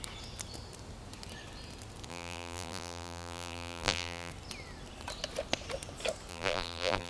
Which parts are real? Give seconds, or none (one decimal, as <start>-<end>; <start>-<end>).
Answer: 0.0-2.1; 4.3-6.3